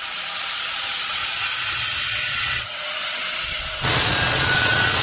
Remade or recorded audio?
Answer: remade